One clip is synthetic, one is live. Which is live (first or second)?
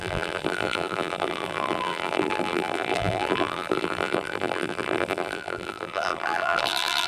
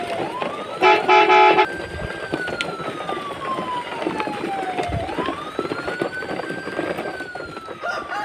second